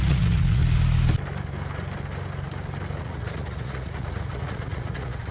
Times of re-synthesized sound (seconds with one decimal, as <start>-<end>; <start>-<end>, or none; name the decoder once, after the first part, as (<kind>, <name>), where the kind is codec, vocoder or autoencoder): 0.0-0.6 (vocoder, Vocos); 3.0-5.3